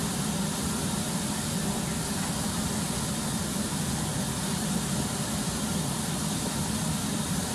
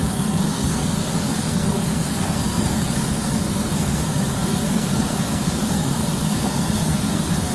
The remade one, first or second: second